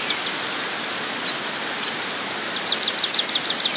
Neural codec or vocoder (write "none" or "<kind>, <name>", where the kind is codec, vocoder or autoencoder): none